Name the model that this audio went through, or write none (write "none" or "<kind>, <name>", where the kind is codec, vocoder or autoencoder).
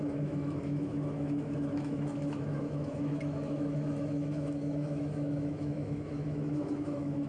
autoencoder, DAC-VAE